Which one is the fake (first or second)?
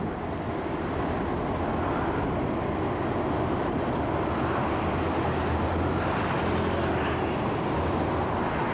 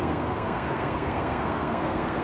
second